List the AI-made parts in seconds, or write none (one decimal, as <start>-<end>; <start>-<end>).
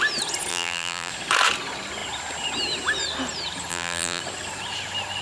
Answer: 0.5-1.1; 3.7-4.2